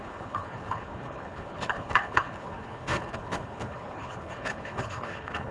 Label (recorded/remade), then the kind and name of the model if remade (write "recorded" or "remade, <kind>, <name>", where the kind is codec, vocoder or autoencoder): remade, codec, HILCodec